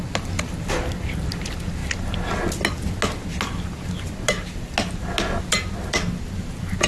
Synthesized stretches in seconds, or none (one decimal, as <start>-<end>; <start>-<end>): none